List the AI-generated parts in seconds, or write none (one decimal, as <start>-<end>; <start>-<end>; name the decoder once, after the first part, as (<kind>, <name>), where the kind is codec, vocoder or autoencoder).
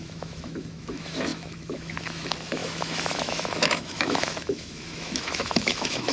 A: 0.0-6.1 (autoencoder, DAC-VAE)